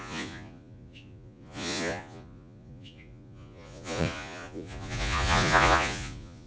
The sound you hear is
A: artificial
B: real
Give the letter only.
A